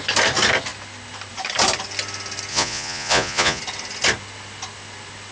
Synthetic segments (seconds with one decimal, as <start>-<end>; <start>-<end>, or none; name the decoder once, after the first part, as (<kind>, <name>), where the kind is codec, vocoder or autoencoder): 2.5-3.6 (vocoder, Vocos)